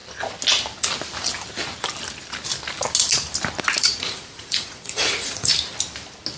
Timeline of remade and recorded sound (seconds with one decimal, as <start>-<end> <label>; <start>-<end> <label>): 0.0-3.8 recorded; 3.8-5.5 remade; 5.5-6.4 recorded